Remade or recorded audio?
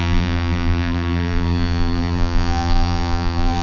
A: remade